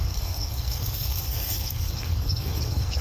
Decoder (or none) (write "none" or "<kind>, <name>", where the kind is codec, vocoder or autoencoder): codec, SNAC